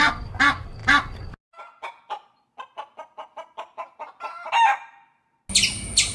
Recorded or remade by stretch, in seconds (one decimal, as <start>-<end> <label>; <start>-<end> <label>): 0.0-6.1 recorded